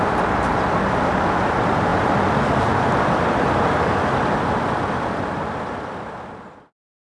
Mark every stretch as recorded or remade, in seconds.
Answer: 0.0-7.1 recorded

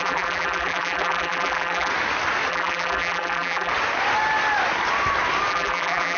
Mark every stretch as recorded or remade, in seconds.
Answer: 0.0-1.9 remade; 1.9-2.5 recorded; 2.5-3.7 remade; 3.7-5.5 recorded; 5.5-6.2 remade

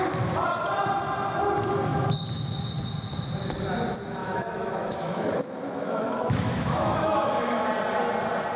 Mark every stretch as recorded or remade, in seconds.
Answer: 0.0-4.2 recorded; 4.2-7.7 remade; 7.7-8.6 recorded